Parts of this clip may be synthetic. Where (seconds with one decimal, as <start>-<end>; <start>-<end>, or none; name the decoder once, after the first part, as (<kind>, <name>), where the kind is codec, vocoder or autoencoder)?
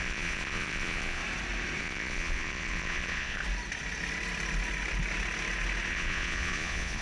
0.0-1.2 (vocoder, Vocos); 1.8-3.4; 5.9-7.0